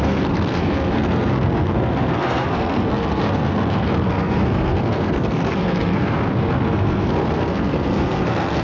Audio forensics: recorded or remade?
remade